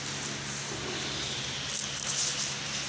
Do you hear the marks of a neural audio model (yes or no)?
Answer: no